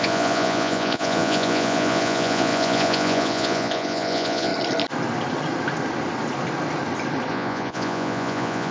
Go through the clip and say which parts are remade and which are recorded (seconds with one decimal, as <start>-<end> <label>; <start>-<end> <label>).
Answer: 0.0-4.5 remade; 4.5-7.3 recorded; 7.3-8.7 remade